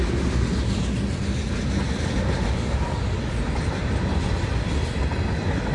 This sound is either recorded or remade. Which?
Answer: recorded